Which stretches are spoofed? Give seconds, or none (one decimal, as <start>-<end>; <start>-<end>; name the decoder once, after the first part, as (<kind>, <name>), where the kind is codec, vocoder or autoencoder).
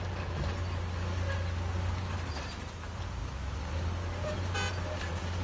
none